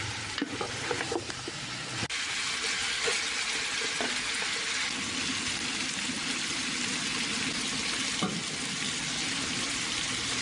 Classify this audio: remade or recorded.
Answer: recorded